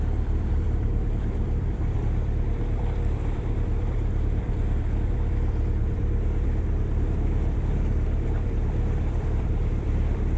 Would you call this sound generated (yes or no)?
yes